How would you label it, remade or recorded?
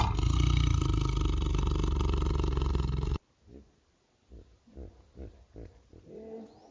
recorded